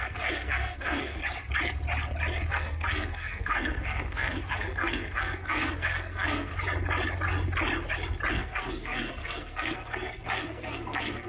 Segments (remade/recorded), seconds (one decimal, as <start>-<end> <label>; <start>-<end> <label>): 0.0-1.2 remade; 1.2-2.5 recorded; 2.5-6.5 remade; 6.5-8.3 recorded; 8.3-11.3 remade